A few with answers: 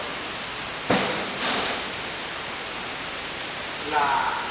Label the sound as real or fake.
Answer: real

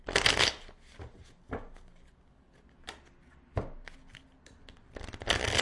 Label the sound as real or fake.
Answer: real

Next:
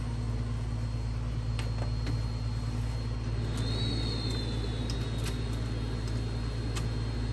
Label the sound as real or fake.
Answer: real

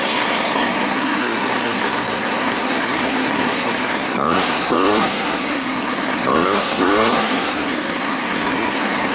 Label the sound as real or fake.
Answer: fake